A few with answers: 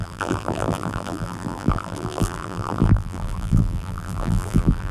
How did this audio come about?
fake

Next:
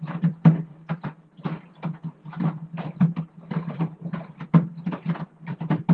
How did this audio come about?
fake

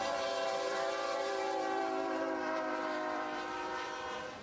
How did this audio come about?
fake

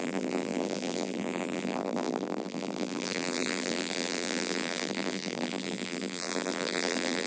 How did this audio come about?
fake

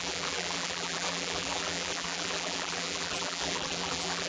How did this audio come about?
fake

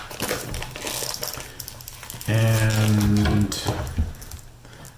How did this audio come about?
real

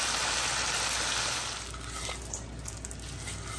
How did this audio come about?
real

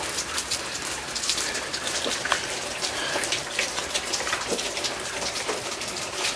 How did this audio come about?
fake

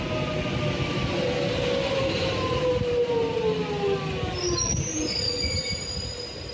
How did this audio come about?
real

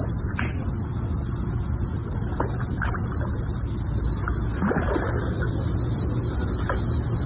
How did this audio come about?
real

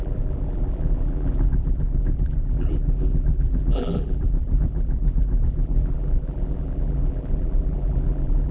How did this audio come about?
fake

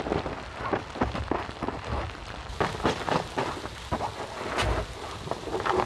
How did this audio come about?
real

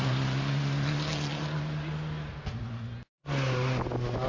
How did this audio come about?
real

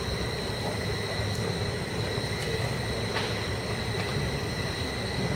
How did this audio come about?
real